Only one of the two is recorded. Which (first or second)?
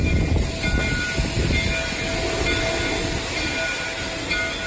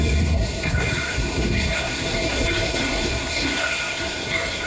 first